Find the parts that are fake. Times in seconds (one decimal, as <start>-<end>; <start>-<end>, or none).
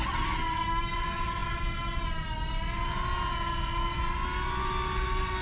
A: none